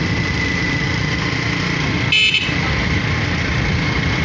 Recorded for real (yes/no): yes